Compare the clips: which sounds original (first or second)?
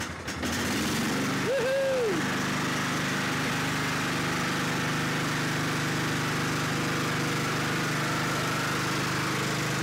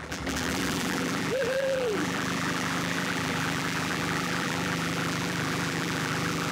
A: first